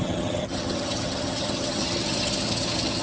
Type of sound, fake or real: fake